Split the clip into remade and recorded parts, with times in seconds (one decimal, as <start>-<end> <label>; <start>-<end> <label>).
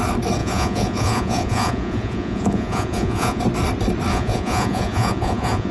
0.0-0.4 recorded; 0.4-3.4 remade; 3.4-4.1 recorded; 4.1-5.7 remade